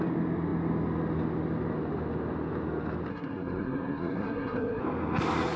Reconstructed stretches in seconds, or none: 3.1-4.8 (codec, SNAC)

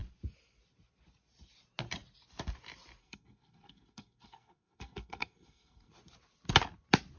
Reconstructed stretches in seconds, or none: 3.0-5.9 (codec, SNAC)